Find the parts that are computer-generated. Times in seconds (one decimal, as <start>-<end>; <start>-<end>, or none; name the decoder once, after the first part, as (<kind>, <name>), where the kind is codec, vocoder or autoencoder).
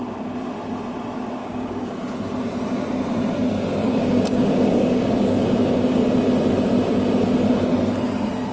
1.4-2.0 (codec, DAC); 3.8-6.0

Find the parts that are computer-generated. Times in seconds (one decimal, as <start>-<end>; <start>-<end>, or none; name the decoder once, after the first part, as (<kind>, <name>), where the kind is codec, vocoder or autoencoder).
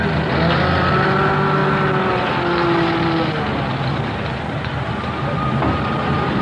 3.5-6.4 (vocoder, BigVGAN v2)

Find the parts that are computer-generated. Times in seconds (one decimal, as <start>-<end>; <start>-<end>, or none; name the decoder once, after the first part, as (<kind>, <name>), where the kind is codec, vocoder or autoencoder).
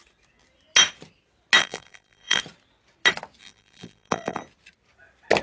1.6-2.4 (vocoder, BigVGAN v2); 3.4-4.4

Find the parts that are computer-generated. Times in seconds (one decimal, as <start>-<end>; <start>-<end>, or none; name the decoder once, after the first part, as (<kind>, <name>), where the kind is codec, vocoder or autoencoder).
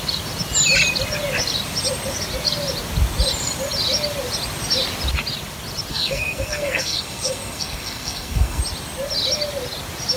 5.9-8.6 (codec, SNAC)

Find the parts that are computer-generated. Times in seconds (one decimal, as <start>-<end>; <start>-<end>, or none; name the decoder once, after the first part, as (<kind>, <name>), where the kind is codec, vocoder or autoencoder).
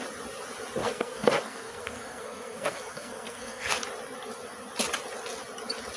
0.8-3.8 (codec, SNAC)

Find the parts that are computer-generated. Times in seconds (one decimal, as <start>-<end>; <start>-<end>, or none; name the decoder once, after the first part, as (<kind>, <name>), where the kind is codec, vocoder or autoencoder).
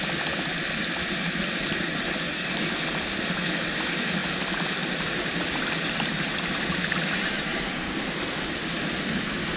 none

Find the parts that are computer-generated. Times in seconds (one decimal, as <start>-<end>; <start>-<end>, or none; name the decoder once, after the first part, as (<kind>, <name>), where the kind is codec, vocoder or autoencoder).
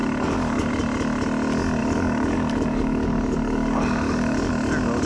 0.0-0.7 (codec, DAC); 1.8-4.5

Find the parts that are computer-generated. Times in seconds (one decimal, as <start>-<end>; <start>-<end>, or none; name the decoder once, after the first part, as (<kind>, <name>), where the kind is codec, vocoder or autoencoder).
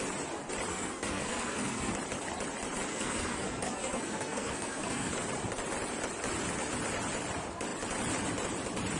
0.7-1.9 (codec, SNAC); 2.9-5.1